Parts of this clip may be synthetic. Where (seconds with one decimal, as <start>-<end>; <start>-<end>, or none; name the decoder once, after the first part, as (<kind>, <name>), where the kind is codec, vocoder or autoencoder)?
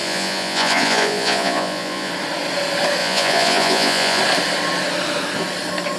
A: 0.0-2.1 (vocoder, Vocos); 3.0-4.2